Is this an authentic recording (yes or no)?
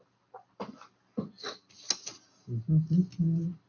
yes